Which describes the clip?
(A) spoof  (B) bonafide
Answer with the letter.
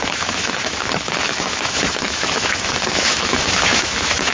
A